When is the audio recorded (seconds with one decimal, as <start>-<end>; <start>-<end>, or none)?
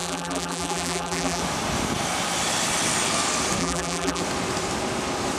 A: 1.4-3.6; 4.2-5.4